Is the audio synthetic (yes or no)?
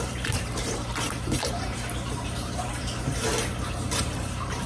yes